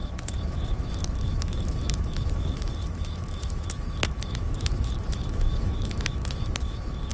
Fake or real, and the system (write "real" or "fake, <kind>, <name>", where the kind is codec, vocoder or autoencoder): fake, autoencoder, DAC-VAE